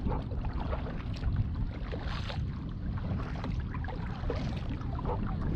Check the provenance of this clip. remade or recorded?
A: recorded